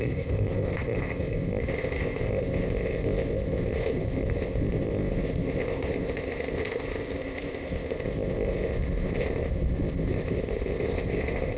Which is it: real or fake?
fake